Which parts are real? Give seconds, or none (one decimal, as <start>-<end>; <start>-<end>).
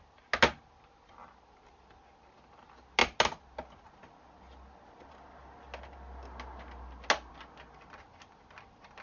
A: 0.0-9.0